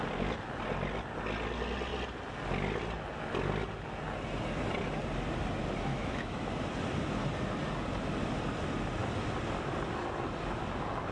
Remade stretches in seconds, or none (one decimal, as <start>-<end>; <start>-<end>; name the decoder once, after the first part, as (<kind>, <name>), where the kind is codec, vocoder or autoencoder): 5.9-6.5 (autoencoder, DAC-VAE)